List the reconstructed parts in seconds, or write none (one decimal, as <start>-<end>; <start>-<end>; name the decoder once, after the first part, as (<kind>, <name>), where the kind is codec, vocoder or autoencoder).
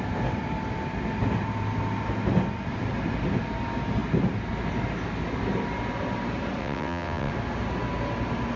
6.6-7.3 (vocoder, WaveNeXt)